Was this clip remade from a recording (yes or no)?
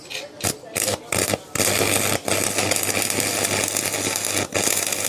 no